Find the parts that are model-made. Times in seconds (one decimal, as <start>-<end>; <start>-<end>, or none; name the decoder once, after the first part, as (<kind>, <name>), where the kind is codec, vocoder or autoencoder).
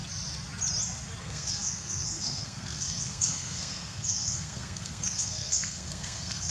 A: 1.2-6.5 (codec, SNAC)